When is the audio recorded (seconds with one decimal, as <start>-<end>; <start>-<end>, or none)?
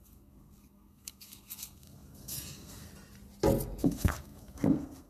2.9-3.8